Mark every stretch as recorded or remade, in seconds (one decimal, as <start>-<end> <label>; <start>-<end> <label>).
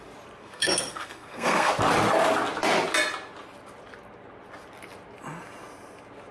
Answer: 0.0-0.4 recorded; 0.4-1.7 remade; 1.7-6.3 recorded